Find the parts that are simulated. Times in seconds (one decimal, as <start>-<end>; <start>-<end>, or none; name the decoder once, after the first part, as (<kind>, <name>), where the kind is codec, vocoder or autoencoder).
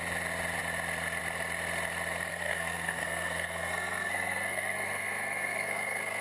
2.3-6.2 (codec, SNAC)